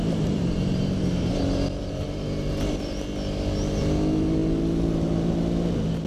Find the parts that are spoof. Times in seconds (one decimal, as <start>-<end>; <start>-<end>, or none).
0.0-1.4; 1.8-2.5